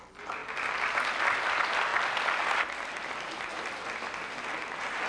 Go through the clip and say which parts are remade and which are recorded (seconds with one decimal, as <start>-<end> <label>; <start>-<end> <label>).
0.0-5.1 recorded